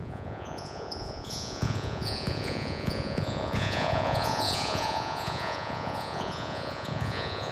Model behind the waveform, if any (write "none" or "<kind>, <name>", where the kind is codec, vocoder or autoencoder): vocoder, Vocos